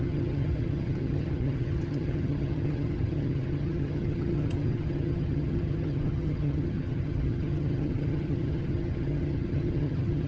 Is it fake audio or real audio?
fake